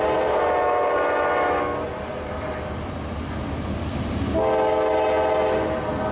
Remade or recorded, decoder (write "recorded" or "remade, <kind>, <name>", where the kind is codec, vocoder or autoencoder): recorded